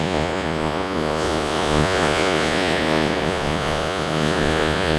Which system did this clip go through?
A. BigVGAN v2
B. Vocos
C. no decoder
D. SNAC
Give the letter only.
B